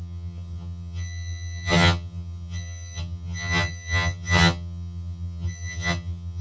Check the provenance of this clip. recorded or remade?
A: remade